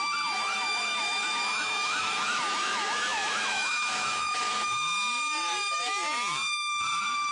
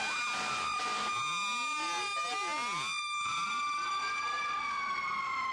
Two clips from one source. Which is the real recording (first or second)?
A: second